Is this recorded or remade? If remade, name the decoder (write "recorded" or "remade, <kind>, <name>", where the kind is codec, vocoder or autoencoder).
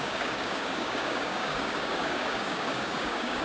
remade, codec, DAC